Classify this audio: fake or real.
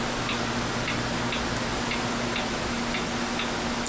real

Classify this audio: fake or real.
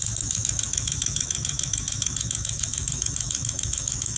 fake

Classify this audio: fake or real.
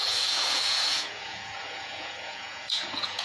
fake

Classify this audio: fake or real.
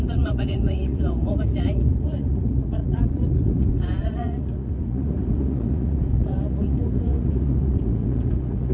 fake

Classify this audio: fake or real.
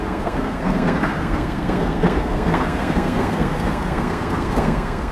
fake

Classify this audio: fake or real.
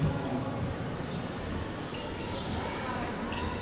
real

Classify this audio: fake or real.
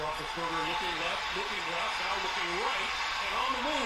real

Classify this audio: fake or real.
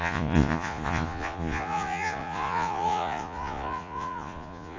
fake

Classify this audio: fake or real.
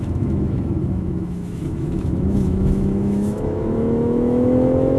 fake